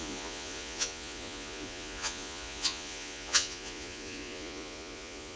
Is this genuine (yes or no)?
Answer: no